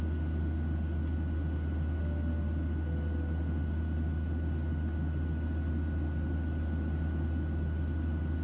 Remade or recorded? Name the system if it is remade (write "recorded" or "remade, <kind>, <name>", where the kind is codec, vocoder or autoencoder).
recorded